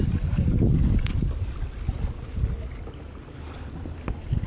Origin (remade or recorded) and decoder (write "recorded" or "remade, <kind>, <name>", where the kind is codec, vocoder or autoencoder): recorded